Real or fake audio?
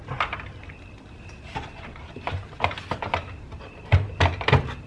real